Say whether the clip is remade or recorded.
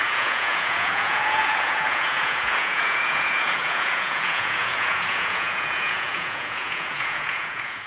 remade